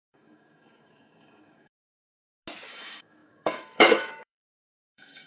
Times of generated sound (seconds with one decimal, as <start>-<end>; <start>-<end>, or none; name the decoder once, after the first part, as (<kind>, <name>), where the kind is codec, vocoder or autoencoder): 0.0-1.9 (autoencoder, DAC-VAE); 2.7-5.3